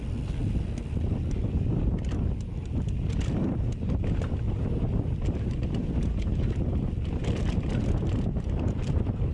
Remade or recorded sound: recorded